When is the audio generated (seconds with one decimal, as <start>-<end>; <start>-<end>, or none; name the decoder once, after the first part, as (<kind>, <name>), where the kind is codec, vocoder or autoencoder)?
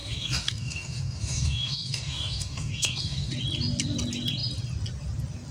0.0-3.3 (codec, DAC)